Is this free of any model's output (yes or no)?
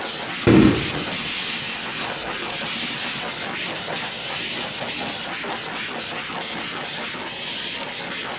yes